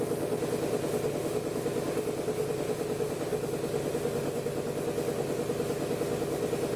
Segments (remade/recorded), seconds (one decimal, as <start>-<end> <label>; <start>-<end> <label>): 0.0-6.8 recorded